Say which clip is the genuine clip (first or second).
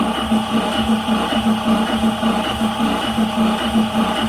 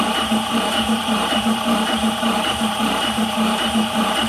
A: first